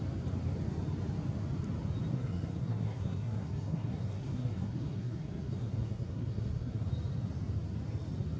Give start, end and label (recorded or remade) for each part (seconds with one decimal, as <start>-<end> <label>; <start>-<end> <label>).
0.0-2.1 recorded; 2.1-6.9 remade; 6.9-8.4 recorded